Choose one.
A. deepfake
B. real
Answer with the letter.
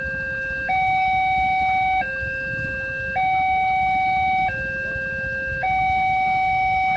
B